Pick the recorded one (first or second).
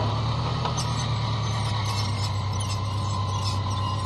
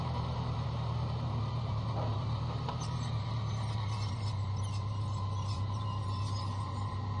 first